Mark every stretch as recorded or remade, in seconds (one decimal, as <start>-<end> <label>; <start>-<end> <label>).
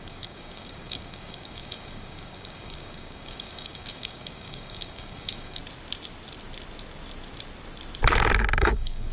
0.0-5.6 remade; 5.6-8.6 recorded; 8.6-9.1 remade